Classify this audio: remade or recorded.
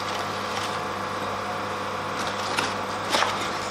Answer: recorded